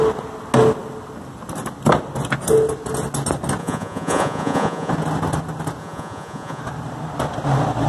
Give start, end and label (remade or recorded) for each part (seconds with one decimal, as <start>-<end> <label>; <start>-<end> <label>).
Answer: 0.0-3.6 recorded; 3.6-4.9 remade; 4.9-5.8 recorded; 5.8-6.6 remade; 6.6-7.9 recorded